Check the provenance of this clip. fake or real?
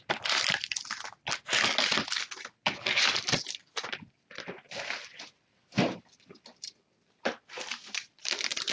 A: real